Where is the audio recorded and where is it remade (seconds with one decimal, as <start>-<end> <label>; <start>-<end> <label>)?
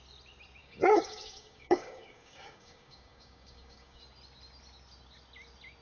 0.0-0.6 recorded; 0.6-4.0 remade; 4.0-5.8 recorded